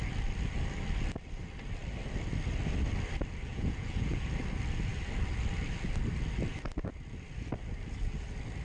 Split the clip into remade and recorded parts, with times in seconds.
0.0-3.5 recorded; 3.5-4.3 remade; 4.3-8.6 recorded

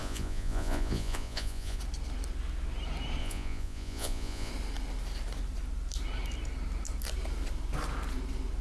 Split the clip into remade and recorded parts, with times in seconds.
0.0-1.8 remade; 1.8-3.2 recorded; 3.2-4.5 remade; 4.5-8.6 recorded